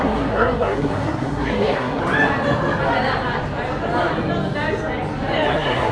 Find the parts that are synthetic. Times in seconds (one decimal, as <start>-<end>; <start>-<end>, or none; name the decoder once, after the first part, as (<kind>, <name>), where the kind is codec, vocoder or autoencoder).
0.0-2.0 (codec, SNAC); 5.5-5.9